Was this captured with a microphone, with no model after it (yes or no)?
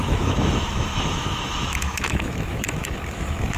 no